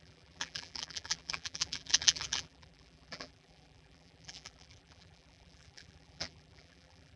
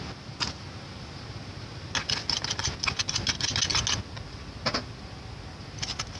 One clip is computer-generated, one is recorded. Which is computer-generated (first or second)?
first